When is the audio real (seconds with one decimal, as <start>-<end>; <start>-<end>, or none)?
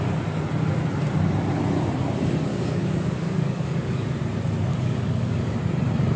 0.0-2.5; 3.9-4.7; 5.6-6.2